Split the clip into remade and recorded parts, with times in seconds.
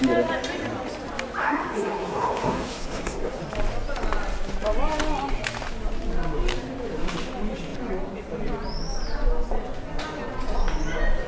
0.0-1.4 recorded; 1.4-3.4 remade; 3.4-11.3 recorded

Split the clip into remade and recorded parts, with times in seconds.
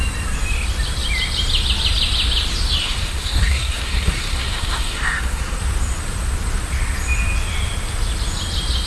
0.0-2.8 recorded; 2.8-5.6 remade; 5.6-8.9 recorded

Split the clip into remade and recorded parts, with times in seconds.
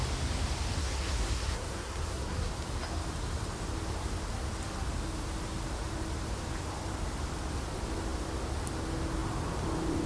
0.0-0.8 recorded; 0.8-2.5 remade; 2.5-10.1 recorded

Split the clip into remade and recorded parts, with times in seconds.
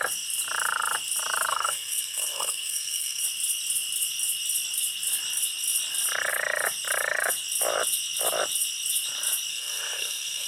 0.0-1.5 recorded; 1.5-3.2 remade; 3.2-9.5 recorded; 9.5-10.5 remade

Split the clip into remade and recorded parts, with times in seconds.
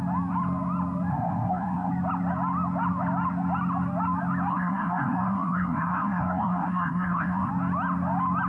0.0-1.1 recorded; 1.1-1.9 remade; 1.9-4.5 recorded; 4.5-7.5 remade; 7.5-8.5 recorded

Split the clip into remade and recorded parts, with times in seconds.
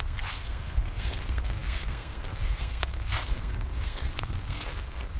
0.0-5.2 remade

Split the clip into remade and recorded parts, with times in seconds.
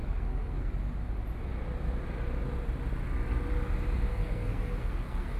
0.0-0.7 remade; 0.7-4.1 recorded; 4.1-5.4 remade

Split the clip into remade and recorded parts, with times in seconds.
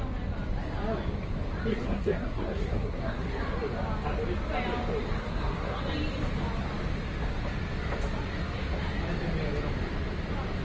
0.0-1.7 recorded; 1.7-3.4 remade; 3.4-5.2 recorded; 5.2-5.8 remade; 5.8-10.6 recorded